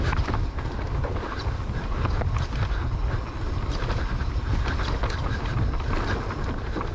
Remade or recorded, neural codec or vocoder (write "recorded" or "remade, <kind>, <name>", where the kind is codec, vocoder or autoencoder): recorded